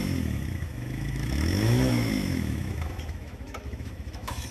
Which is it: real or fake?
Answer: fake